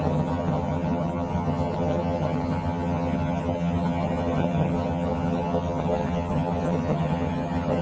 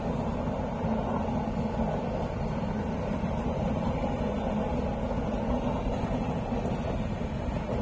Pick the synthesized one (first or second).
first